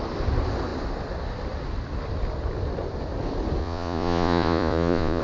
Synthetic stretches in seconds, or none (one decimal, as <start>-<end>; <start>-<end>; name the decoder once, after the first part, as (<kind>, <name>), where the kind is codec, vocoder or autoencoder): 3.6-5.2 (vocoder, Vocos)